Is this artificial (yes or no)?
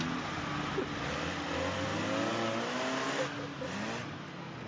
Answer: no